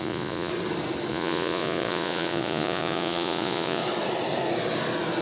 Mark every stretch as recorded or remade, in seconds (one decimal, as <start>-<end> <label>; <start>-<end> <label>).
0.0-0.5 remade; 0.5-1.1 recorded; 1.1-3.8 remade; 3.8-5.2 recorded